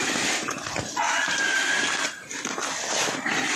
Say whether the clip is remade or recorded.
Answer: recorded